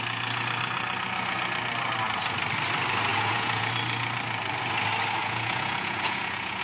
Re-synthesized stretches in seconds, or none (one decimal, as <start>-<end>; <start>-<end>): 3.1-3.7; 5.2-6.6